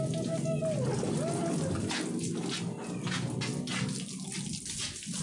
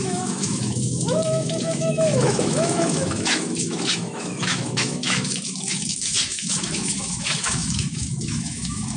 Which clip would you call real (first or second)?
first